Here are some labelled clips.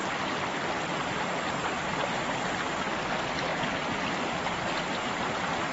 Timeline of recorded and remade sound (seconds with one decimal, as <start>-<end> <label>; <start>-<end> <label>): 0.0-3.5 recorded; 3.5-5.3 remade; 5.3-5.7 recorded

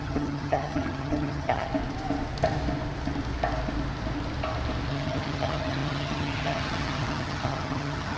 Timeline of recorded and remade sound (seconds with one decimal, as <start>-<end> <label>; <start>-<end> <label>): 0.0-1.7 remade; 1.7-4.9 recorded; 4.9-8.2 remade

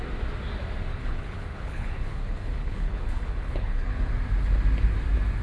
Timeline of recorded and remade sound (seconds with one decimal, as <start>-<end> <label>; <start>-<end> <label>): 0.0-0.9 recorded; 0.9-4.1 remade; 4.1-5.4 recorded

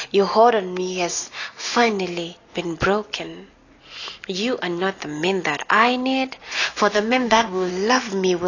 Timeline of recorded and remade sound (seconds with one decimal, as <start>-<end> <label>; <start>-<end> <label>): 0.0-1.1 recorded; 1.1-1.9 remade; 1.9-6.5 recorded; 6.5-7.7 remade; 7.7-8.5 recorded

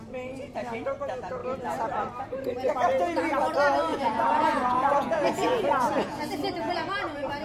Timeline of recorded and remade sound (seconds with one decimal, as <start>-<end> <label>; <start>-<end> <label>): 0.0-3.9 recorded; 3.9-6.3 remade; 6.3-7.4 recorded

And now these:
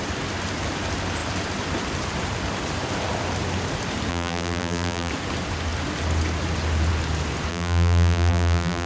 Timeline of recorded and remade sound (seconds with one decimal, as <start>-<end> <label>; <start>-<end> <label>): 0.0-4.1 recorded; 4.1-5.1 remade; 5.1-7.5 recorded; 7.5-8.9 remade